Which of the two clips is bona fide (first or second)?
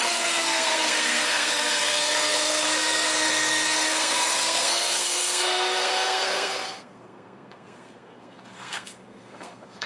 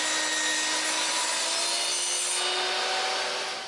second